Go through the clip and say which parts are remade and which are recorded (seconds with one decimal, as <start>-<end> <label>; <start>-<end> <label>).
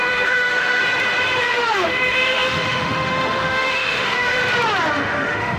0.0-0.8 remade; 0.8-1.4 recorded; 1.4-4.4 remade; 4.4-4.9 recorded; 4.9-5.6 remade